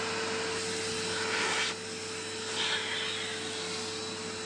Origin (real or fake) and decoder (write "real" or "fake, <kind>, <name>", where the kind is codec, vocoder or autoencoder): real